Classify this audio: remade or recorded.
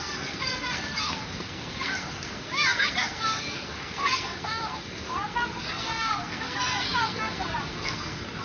remade